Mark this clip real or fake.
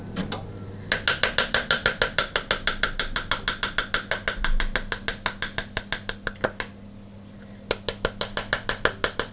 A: real